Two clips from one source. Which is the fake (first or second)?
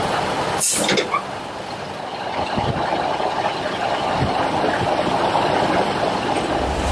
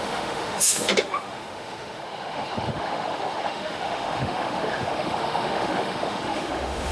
second